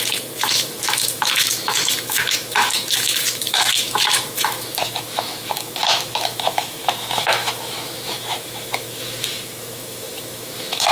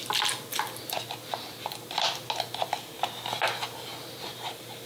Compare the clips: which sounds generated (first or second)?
first